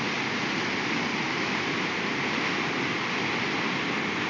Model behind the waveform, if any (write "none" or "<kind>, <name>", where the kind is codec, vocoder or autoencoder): none